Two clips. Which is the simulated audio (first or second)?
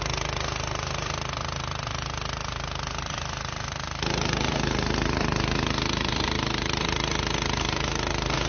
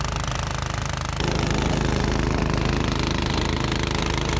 first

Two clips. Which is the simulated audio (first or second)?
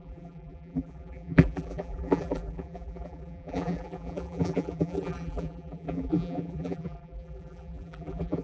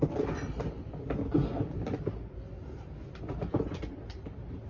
first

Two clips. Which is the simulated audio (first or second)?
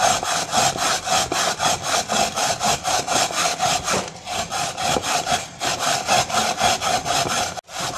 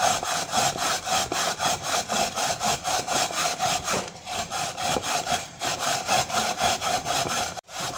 second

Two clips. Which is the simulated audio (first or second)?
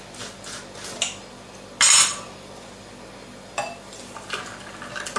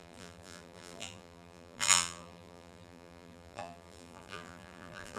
second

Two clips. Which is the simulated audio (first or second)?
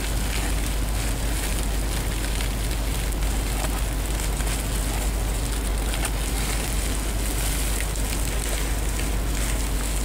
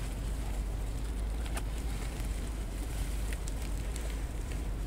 second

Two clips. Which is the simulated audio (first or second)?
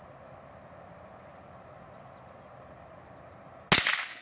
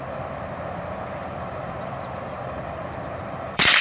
second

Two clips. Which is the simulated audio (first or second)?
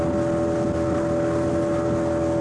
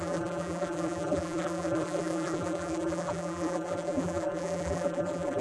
second